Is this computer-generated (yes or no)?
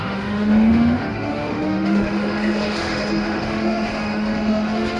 yes